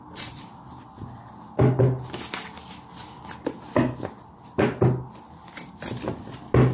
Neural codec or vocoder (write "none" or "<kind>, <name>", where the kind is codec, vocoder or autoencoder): none